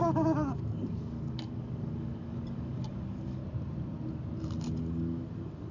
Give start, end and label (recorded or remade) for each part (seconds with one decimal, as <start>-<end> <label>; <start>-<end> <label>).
0.0-3.4 remade; 3.4-4.8 recorded; 4.8-5.7 remade